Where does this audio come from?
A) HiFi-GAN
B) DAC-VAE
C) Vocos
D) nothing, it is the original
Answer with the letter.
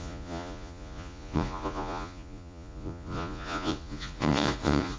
C